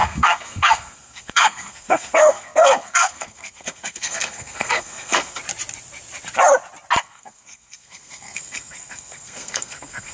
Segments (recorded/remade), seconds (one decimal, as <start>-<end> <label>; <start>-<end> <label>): 0.0-5.4 remade; 5.4-7.0 recorded; 7.0-10.1 remade

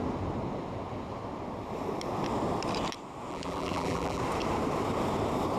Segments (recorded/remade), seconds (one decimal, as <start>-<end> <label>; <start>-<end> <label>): 0.0-3.3 recorded; 3.3-4.2 remade; 4.2-5.6 recorded

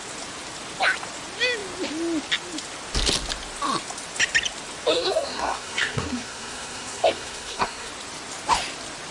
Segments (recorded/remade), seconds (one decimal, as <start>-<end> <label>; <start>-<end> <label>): 0.0-4.9 recorded; 4.9-7.9 remade; 7.9-9.1 recorded

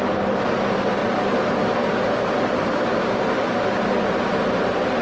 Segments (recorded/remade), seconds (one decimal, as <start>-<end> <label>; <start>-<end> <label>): 0.0-5.0 recorded

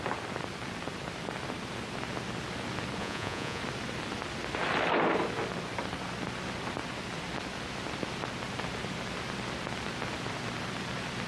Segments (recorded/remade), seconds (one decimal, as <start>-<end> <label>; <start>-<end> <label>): 0.0-3.0 recorded; 3.0-3.6 remade; 3.6-11.3 recorded

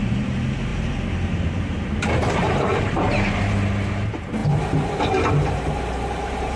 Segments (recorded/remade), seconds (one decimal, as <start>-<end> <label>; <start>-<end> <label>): 0.0-4.4 remade; 4.4-5.0 recorded; 5.0-6.6 remade

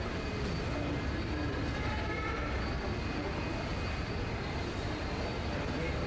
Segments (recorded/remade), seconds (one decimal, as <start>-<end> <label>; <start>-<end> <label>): 0.0-6.1 recorded